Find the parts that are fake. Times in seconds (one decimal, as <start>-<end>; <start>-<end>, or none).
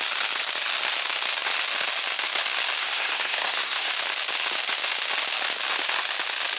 2.8-3.9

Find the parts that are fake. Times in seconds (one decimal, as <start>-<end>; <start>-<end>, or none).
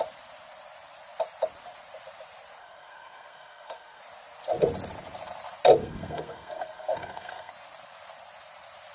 2.6-4.0; 5.8-7.5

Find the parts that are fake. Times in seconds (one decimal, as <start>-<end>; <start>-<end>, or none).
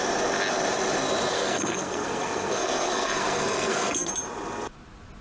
1.3-4.1